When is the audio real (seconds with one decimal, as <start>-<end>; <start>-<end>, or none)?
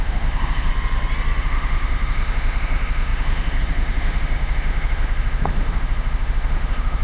0.7-1.4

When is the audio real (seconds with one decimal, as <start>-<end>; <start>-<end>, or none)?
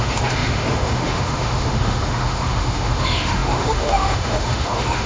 none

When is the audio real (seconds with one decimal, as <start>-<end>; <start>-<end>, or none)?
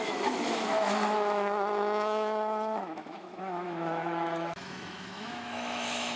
none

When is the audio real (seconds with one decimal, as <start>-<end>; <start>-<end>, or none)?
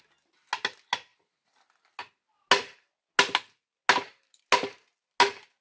0.0-5.6